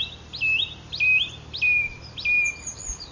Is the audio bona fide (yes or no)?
yes